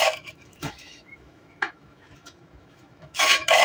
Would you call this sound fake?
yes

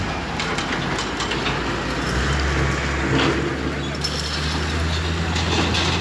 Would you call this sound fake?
no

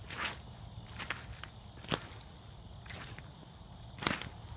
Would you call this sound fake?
no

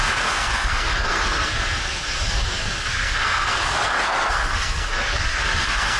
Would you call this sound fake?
yes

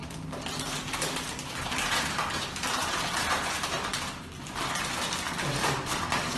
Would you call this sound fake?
no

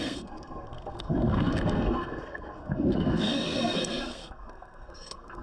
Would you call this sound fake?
yes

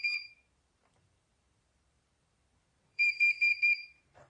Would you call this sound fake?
yes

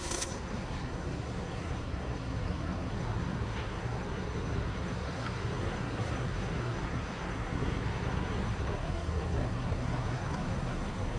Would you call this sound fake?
yes